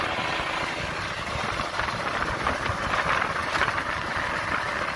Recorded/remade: recorded